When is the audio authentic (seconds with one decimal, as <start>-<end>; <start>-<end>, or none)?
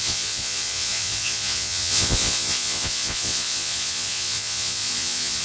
none